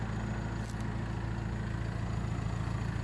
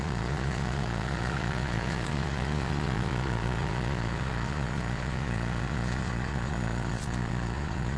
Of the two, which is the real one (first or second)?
first